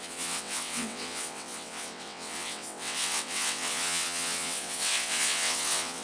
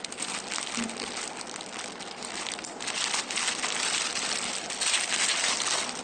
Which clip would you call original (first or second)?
second